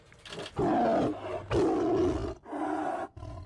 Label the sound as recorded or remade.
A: recorded